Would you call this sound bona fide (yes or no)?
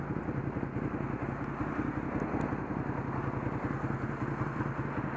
yes